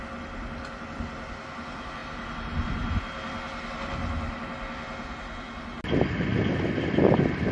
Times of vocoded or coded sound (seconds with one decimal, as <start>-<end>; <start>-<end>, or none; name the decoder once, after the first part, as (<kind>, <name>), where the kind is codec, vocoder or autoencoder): none

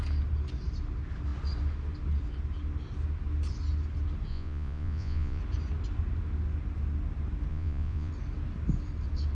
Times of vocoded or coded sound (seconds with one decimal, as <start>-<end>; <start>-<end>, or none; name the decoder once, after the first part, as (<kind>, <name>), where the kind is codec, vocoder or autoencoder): 4.3-5.4 (vocoder, Vocos); 7.5-8.1

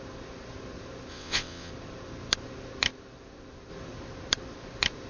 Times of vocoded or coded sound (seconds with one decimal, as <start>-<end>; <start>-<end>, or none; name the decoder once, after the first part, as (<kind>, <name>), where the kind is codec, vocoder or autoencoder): 1.1-1.7 (vocoder, WaveNeXt)

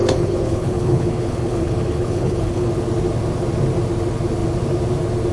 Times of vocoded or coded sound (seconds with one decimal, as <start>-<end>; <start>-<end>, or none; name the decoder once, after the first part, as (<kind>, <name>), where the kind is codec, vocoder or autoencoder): 0.0-2.7 (codec, HILCodec)

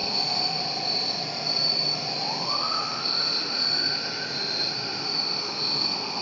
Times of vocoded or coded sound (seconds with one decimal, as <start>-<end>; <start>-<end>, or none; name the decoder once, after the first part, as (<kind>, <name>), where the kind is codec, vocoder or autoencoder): 0.0-0.6 (autoencoder, DAC-VAE); 2.4-6.2

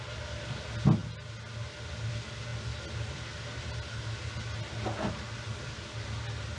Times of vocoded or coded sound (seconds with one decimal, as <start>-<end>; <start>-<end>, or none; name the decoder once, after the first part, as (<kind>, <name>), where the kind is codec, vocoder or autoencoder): none

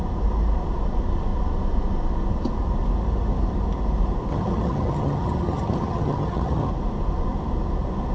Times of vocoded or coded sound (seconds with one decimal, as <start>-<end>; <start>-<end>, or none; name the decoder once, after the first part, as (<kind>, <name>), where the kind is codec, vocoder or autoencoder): 4.3-6.7 (vocoder, HiFi-GAN)